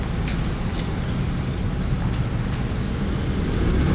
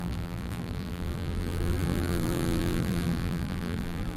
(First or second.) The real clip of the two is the first